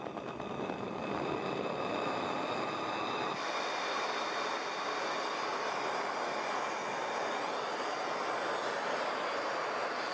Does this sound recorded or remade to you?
recorded